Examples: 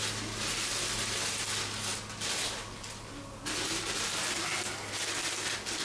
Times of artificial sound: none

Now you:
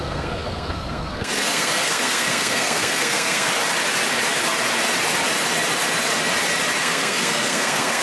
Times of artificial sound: 0.0-3.5 (codec, SNAC); 6.8-8.0